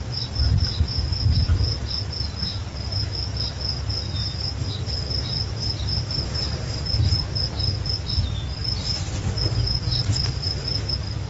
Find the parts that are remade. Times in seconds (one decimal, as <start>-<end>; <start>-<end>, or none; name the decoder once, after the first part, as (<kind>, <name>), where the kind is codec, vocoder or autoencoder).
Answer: 4.2-5.0 (vocoder, BigVGAN v2)